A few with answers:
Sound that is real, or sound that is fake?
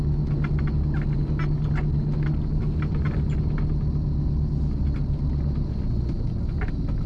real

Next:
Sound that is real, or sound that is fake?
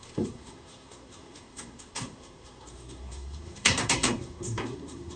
fake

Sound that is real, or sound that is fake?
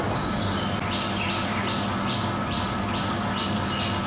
real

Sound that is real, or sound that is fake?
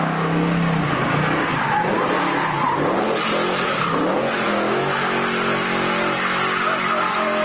real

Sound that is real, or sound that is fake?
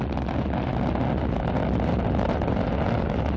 real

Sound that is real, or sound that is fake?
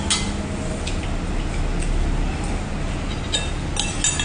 real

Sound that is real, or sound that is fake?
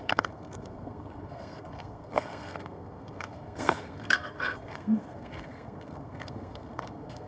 fake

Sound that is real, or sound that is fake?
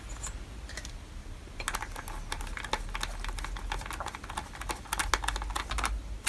real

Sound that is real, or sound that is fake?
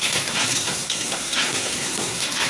fake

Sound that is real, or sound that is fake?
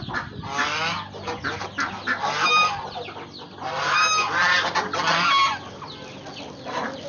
real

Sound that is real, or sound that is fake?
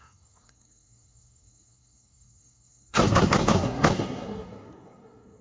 fake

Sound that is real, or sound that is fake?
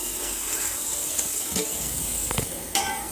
fake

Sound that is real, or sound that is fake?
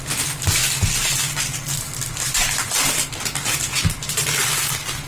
real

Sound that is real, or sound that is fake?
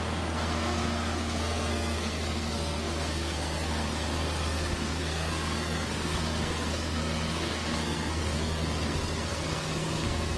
fake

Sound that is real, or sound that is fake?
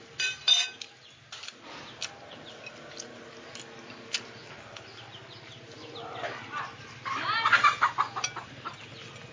real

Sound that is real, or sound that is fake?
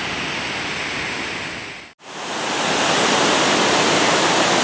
real